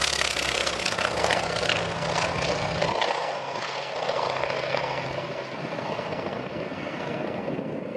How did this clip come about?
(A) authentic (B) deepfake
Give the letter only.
B